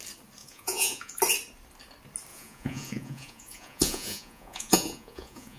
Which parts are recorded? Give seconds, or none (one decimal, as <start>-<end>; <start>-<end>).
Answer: 0.0-0.4; 1.2-2.3